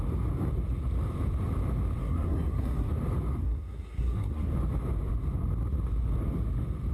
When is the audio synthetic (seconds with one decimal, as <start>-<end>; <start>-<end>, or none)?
2.0-2.9; 3.4-4.5